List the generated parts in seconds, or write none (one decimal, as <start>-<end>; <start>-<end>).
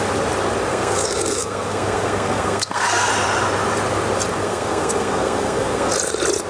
0.7-3.1; 4.4-5.9